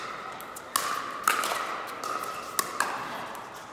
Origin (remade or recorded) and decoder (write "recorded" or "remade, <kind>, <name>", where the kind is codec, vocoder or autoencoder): recorded